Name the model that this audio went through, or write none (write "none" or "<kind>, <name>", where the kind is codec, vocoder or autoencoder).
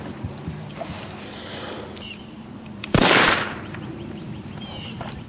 vocoder, BigVGAN v2